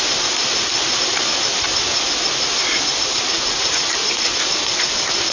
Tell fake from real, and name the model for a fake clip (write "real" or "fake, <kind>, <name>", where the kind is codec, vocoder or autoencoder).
real